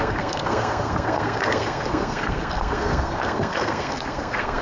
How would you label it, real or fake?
fake